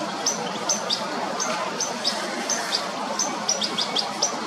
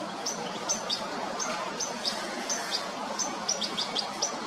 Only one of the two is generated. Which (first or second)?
second